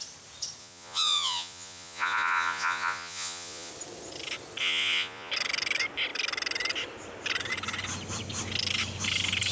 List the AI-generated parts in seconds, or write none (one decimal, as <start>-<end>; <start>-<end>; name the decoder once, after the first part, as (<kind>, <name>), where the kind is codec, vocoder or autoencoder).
0.6-3.7 (vocoder, Vocos); 4.6-5.3